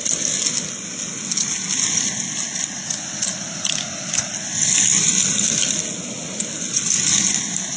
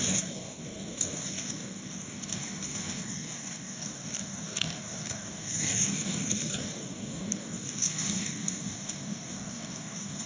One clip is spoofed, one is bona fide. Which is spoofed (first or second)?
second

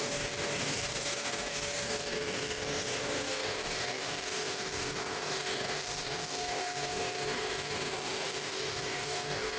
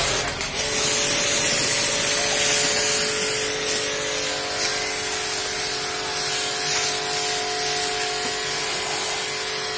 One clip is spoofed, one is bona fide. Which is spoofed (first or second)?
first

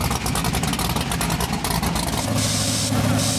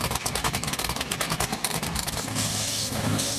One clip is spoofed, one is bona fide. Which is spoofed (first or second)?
second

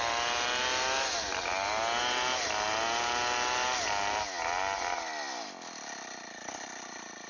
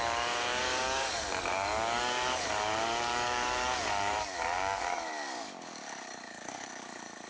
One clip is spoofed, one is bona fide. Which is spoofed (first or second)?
second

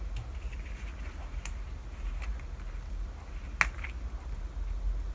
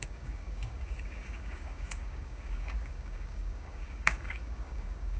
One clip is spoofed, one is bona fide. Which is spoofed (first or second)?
second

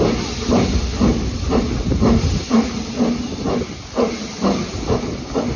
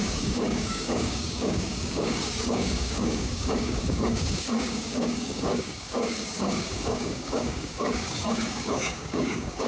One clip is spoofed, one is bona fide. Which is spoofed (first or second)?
second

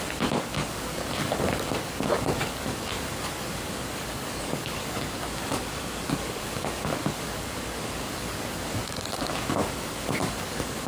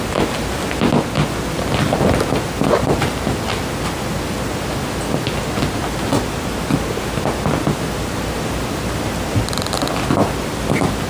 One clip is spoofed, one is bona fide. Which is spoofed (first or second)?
first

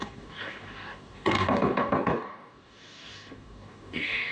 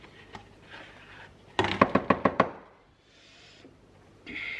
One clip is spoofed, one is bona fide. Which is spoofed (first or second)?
first